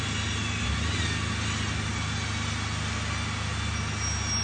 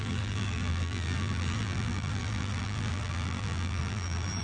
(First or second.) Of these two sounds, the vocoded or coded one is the second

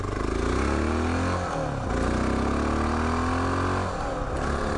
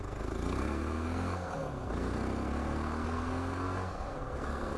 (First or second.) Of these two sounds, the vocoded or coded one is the second